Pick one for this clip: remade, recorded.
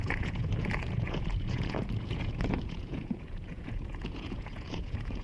remade